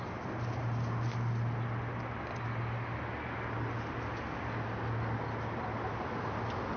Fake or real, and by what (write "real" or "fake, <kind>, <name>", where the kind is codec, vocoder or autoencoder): real